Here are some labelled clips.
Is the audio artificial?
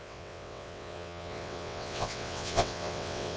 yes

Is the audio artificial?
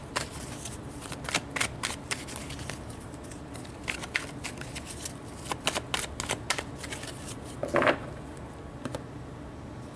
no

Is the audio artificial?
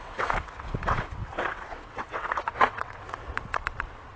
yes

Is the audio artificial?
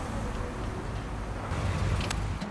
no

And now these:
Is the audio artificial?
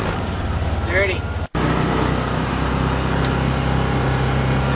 no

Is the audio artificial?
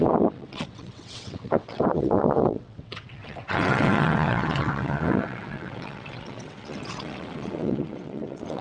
yes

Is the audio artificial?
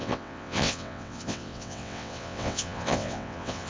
yes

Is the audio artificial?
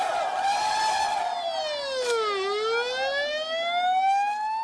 no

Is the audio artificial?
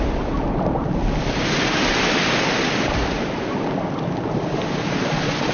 no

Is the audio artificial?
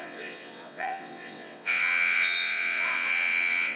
yes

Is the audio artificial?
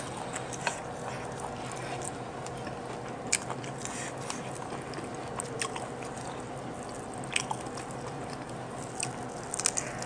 no